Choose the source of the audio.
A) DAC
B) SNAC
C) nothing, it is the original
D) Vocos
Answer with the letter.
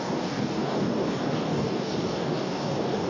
A